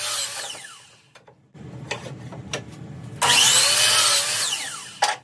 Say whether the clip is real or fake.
real